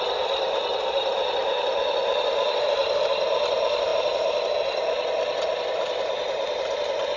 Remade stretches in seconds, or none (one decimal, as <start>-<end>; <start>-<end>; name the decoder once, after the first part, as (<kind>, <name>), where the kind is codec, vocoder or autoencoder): 0.7-3.1 (vocoder, BigVGAN v2); 3.9-7.2